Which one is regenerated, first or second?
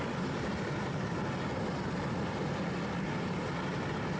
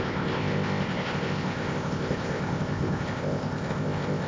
second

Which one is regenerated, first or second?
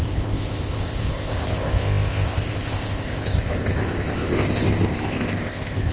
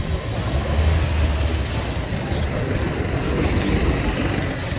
first